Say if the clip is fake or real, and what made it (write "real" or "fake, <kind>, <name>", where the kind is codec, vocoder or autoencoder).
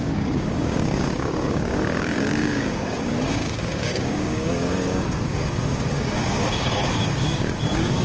fake, codec, DAC